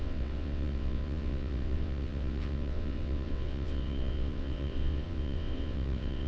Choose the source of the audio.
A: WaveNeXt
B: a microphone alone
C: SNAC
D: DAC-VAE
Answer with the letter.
A